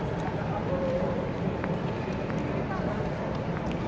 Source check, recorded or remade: recorded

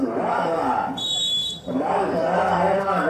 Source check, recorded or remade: remade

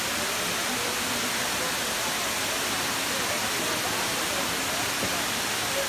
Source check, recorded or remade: recorded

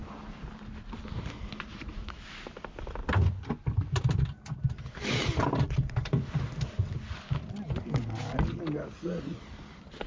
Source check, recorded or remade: recorded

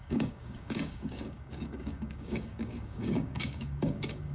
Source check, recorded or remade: remade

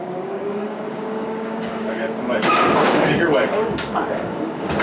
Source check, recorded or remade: remade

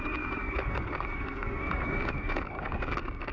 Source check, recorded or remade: remade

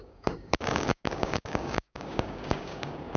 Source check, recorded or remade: remade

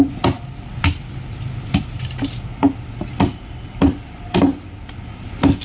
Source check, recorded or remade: recorded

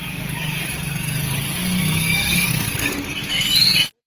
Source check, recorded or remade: remade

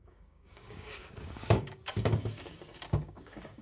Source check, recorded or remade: remade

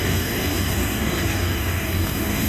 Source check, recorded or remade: remade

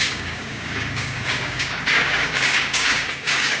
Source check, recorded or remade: remade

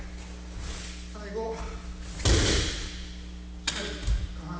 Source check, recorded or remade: recorded